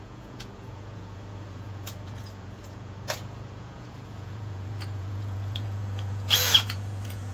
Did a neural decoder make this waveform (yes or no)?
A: yes